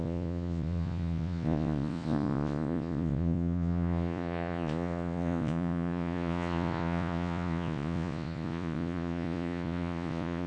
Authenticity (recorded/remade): remade